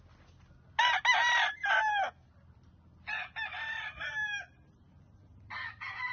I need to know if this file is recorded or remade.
recorded